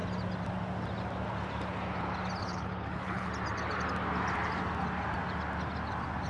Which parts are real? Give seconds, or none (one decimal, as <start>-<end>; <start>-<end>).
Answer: 0.0-2.4; 3.3-6.3